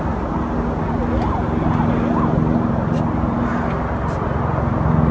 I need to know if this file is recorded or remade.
recorded